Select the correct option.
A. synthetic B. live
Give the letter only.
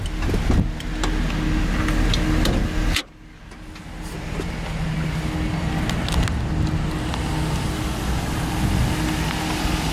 B